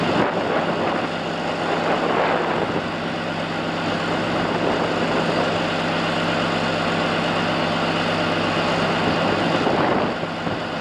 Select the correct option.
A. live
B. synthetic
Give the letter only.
A